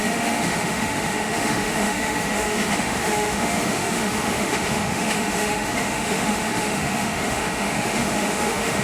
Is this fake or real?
fake